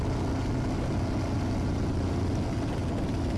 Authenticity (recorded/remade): recorded